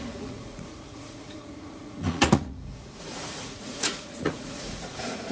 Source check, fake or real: fake